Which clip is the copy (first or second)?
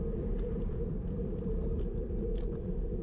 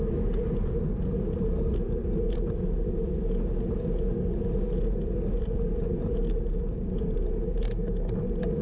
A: first